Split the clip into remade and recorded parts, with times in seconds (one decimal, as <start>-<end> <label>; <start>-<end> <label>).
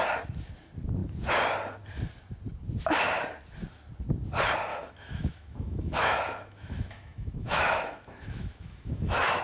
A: 0.0-4.7 recorded; 4.7-9.4 remade